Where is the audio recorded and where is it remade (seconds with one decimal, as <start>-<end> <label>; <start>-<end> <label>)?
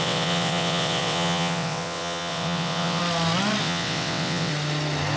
0.0-3.0 remade; 3.0-3.6 recorded; 3.6-4.5 remade; 4.5-5.2 recorded